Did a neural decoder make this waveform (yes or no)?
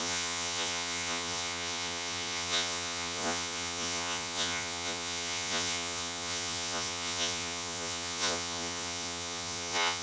yes